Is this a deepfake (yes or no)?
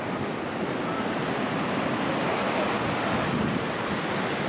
no